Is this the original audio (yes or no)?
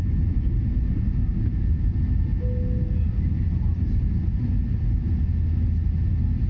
yes